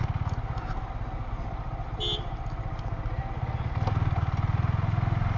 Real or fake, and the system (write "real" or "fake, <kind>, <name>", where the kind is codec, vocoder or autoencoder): real